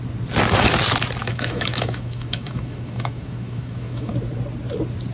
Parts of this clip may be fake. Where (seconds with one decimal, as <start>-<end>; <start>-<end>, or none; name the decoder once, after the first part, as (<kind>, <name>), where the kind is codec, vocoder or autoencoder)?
1.2-4.1 (autoencoder, DAC-VAE)